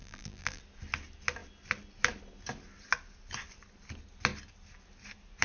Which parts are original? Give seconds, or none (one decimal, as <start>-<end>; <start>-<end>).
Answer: 0.6-5.4